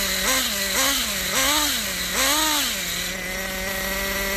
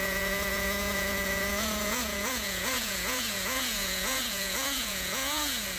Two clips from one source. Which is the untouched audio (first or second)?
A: first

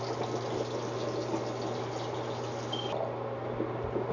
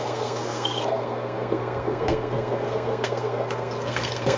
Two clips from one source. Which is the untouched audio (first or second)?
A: first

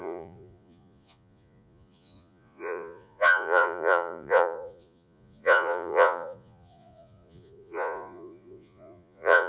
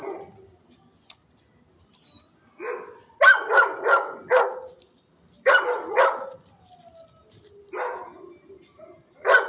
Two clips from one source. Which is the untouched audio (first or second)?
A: second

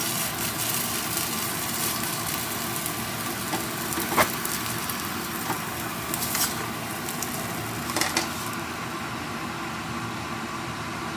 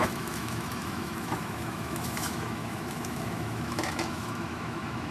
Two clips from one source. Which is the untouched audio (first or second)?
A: first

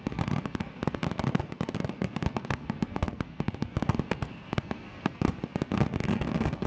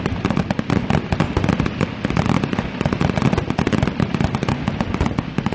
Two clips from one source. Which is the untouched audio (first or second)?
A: second